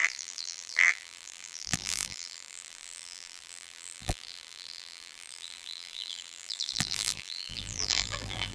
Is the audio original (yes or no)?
no